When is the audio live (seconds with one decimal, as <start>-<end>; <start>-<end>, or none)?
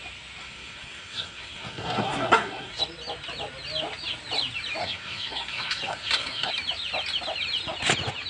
0.0-0.4; 2.8-4.8; 6.5-8.3